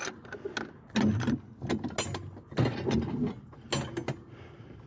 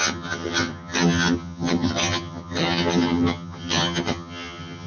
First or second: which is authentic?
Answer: first